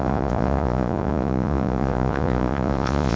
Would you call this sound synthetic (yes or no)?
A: yes